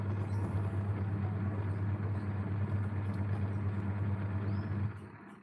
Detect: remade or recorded recorded